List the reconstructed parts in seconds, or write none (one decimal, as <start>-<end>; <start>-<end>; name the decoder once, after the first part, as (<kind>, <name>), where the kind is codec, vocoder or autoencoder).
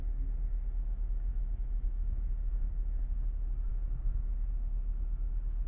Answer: 1.3-2.3 (autoencoder, DAC-VAE)